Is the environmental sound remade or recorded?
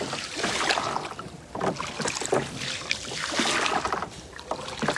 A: recorded